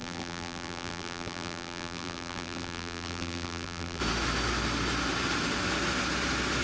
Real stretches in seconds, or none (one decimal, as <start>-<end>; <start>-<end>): 4.0-6.6

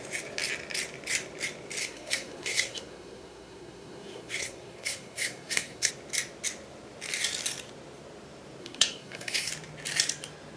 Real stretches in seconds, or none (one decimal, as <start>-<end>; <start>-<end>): 0.0-1.8; 5.9-8.6; 9.5-10.6